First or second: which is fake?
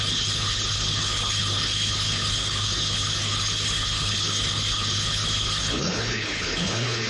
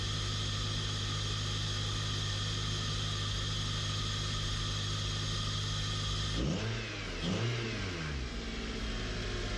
first